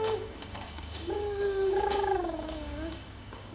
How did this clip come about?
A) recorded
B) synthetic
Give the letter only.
B